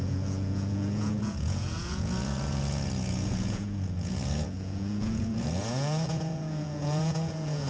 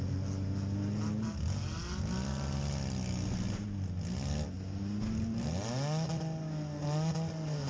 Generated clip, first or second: first